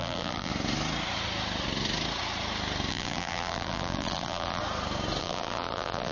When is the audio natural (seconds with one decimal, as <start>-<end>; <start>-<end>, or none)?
0.5-2.9; 4.6-5.2